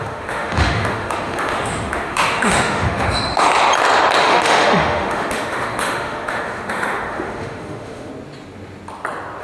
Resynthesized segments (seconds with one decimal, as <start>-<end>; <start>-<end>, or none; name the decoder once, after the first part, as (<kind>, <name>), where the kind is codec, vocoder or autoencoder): 0.0-3.5 (autoencoder, DAC-VAE); 4.2-8.1